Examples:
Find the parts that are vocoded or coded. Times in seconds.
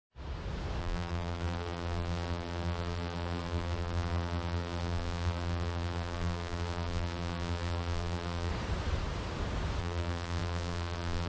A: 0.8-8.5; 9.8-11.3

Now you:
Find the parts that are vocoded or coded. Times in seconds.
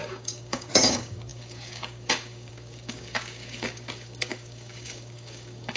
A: 0.0-5.8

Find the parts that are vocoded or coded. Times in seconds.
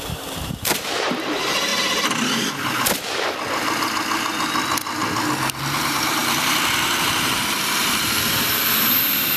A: 0.0-1.7; 5.6-9.4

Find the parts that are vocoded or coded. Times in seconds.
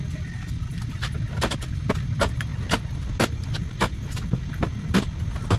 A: none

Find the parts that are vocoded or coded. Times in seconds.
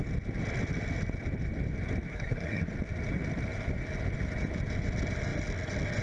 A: 2.1-2.7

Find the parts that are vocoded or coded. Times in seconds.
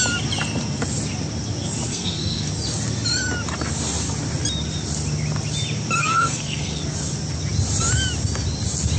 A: 1.9-2.5; 6.0-6.8